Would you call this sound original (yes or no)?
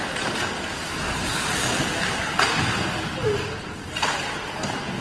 yes